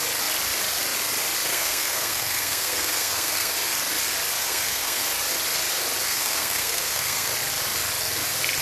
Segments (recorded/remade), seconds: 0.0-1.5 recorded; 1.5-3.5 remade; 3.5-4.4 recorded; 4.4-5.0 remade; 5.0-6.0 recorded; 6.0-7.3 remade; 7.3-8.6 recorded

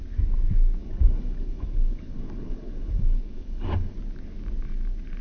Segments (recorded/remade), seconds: 0.0-0.8 recorded; 0.8-3.9 remade; 3.9-5.2 recorded

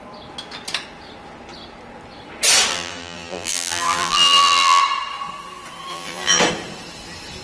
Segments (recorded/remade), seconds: 0.0-2.7 recorded; 2.7-4.8 remade; 4.8-5.9 recorded; 5.9-6.4 remade; 6.4-7.4 recorded

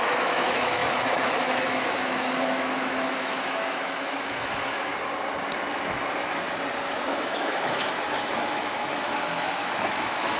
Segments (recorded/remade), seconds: 0.0-4.9 remade; 4.9-7.2 recorded; 7.2-10.4 remade

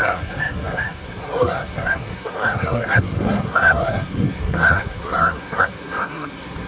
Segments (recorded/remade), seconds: 0.0-6.7 remade

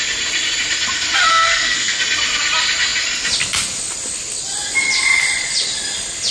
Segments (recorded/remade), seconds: 0.0-1.3 recorded; 1.3-2.0 remade; 2.0-6.3 recorded

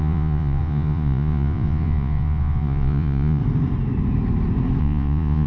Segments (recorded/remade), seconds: 0.0-3.4 remade; 3.4-4.8 recorded; 4.8-5.5 remade

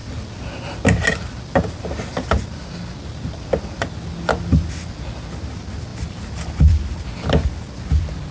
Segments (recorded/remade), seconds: 0.0-8.3 recorded